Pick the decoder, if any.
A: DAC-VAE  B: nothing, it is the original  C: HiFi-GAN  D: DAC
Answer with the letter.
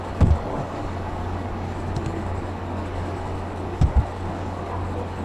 D